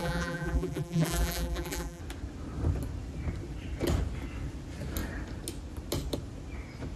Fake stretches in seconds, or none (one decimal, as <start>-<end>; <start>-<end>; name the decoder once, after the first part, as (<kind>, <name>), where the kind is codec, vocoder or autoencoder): 0.0-2.0 (vocoder, BigVGAN v2)